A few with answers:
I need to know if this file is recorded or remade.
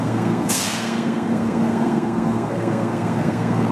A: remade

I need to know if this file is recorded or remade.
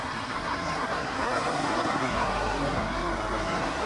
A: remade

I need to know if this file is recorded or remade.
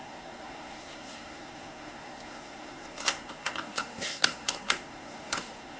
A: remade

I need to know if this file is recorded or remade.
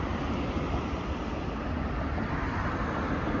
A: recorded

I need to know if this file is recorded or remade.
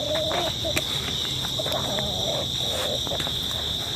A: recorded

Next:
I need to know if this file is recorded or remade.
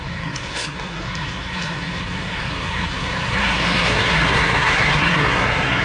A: remade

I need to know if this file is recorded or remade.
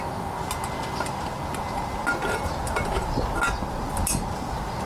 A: recorded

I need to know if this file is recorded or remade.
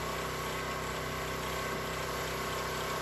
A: recorded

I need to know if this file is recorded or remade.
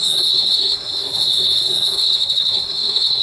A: remade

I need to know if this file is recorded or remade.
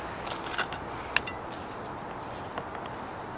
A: recorded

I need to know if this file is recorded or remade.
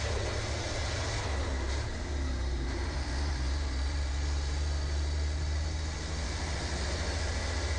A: recorded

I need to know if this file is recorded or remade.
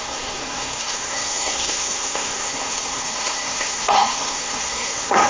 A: remade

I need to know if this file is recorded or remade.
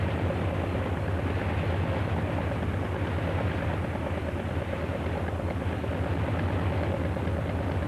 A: recorded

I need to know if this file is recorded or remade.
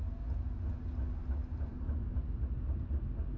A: recorded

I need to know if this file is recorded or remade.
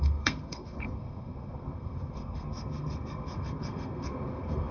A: remade